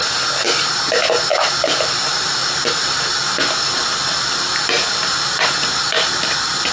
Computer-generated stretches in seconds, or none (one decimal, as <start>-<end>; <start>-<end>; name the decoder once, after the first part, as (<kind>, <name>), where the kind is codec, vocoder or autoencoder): 0.0-1.3 (vocoder, BigVGAN v2); 2.0-2.4